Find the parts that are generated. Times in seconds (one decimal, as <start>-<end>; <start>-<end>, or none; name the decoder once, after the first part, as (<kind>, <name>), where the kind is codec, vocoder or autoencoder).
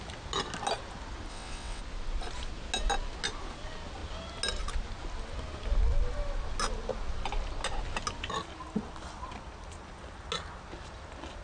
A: 1.3-1.8 (vocoder, WaveNeXt)